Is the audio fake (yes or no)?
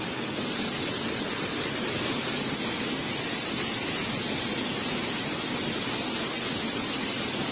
no